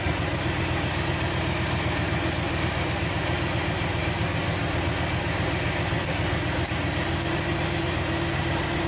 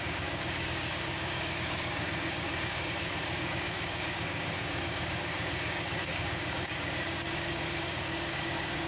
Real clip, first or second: first